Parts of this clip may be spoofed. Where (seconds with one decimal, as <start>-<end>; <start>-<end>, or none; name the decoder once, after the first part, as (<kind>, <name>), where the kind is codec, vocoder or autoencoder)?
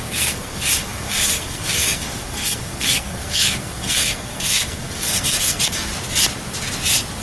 0.0-5.9 (codec, SNAC)